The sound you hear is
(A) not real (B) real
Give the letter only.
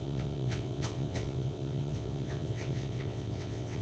A